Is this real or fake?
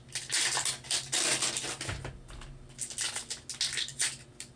real